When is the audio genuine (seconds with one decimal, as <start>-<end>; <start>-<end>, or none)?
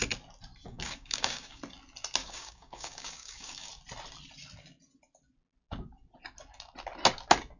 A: 0.0-0.7; 1.6-2.2; 3.7-7.6